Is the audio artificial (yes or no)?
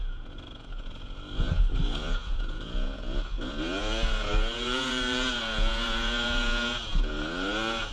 yes